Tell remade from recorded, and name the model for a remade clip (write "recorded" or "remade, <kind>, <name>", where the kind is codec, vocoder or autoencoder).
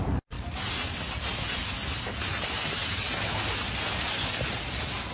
recorded